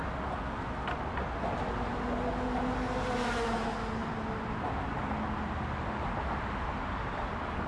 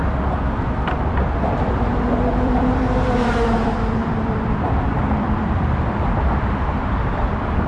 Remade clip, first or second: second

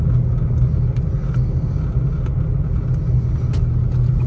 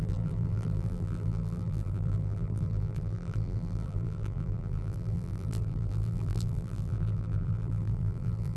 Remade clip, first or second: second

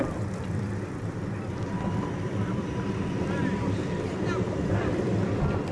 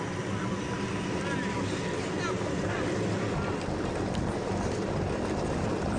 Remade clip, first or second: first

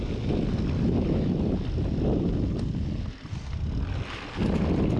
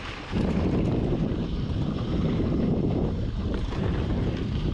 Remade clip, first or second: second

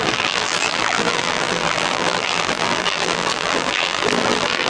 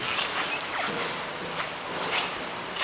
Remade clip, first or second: first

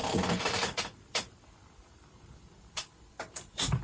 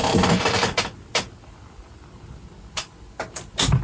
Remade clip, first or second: first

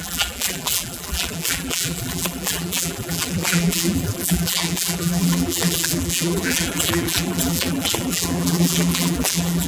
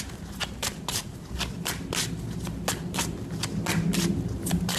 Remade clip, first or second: first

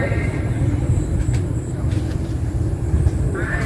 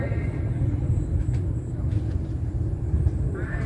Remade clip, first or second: first